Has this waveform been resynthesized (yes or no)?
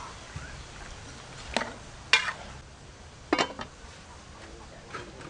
no